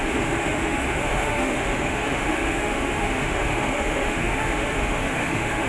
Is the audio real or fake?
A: fake